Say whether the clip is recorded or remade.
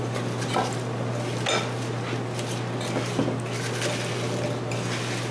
recorded